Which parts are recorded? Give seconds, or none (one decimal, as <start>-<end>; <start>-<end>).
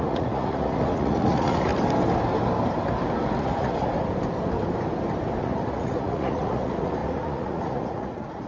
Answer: 1.7-3.4; 3.9-5.4